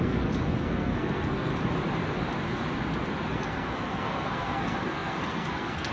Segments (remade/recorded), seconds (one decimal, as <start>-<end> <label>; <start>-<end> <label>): 0.0-1.5 remade; 1.5-3.3 recorded; 3.3-5.9 remade